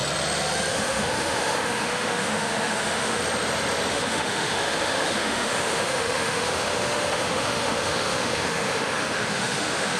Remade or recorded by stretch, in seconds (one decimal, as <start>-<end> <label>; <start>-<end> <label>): 0.0-0.7 recorded; 0.7-3.2 remade; 3.2-3.9 recorded; 3.9-10.0 remade